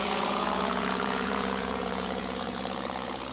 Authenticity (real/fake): fake